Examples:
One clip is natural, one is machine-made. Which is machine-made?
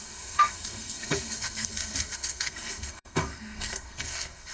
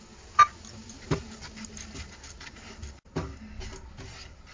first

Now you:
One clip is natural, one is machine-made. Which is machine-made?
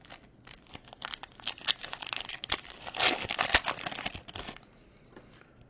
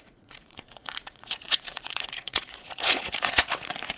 second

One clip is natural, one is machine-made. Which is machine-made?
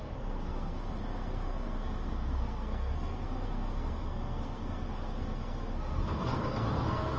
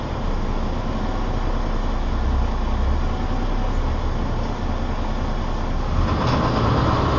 first